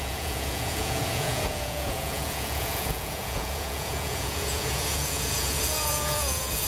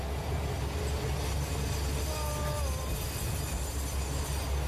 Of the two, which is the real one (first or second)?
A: second